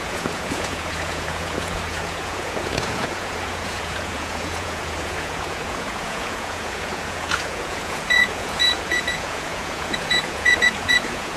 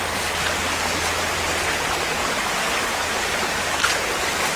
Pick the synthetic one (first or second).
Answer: first